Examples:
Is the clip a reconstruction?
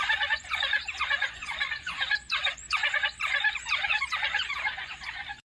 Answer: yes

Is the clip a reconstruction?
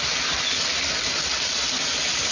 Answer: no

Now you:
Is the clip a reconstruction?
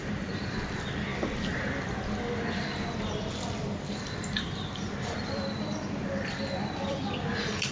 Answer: yes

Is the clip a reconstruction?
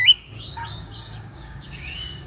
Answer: yes